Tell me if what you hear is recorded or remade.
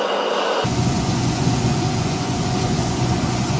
remade